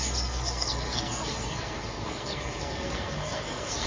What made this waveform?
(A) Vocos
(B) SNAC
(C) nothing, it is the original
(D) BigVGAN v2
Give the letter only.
B